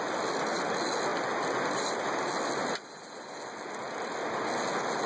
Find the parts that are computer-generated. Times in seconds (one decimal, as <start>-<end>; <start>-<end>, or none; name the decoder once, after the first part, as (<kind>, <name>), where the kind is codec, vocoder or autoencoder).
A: none